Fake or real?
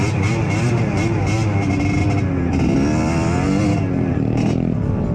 real